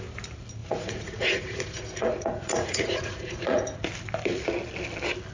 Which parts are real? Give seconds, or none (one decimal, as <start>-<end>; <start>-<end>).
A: 0.0-0.6; 3.8-5.3